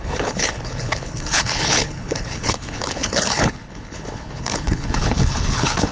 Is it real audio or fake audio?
fake